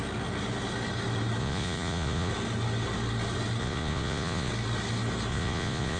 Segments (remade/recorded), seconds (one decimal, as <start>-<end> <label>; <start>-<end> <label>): 0.0-1.4 recorded; 1.4-2.3 remade; 2.3-3.6 recorded; 3.6-4.5 remade; 4.5-5.3 recorded; 5.3-6.0 remade